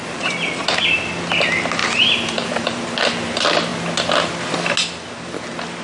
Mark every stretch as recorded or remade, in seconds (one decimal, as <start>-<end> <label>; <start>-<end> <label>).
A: 0.0-0.8 remade; 0.8-1.8 recorded; 1.8-2.8 remade; 2.8-5.8 recorded